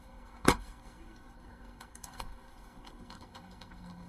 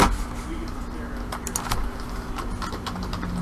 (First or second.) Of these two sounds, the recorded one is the second